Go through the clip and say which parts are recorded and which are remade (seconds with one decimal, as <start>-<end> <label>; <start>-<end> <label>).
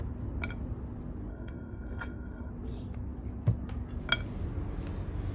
0.0-1.3 recorded; 1.3-2.5 remade; 2.5-5.3 recorded